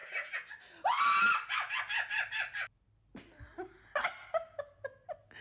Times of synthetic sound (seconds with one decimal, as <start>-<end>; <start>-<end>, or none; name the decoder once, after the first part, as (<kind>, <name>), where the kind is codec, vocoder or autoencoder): none